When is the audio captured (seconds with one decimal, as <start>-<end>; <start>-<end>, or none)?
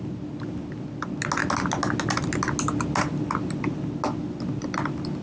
0.0-5.2